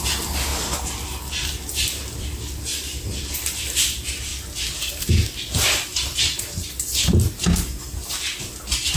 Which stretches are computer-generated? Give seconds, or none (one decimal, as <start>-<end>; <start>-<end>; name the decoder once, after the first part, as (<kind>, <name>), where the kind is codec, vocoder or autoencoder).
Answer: none